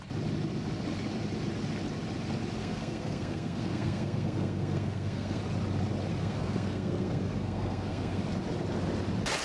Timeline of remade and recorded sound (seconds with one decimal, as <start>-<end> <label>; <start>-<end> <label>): 0.0-2.6 recorded; 2.6-5.4 remade; 5.4-6.2 recorded; 6.2-8.2 remade; 8.2-9.4 recorded